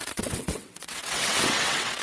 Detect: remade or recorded remade